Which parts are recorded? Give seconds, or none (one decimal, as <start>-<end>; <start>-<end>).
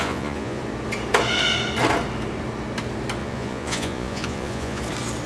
0.6-3.2; 4.8-5.3